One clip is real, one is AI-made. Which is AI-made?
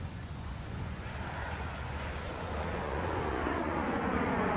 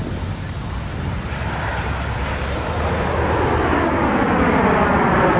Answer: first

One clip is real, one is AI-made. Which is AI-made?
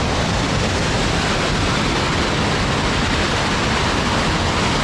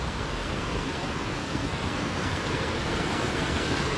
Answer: second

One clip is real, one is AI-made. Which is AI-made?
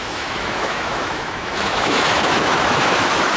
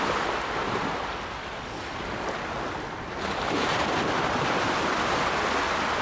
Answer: first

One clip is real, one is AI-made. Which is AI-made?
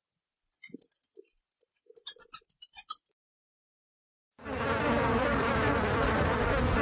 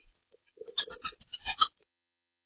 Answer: second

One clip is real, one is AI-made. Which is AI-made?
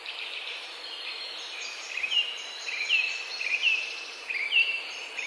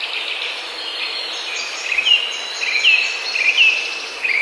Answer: first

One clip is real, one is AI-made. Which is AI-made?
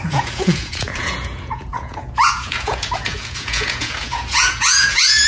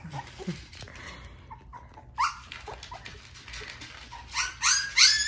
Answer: first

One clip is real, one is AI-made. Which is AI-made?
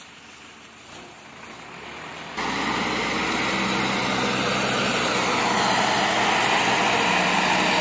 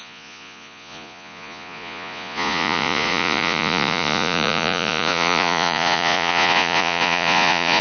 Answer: second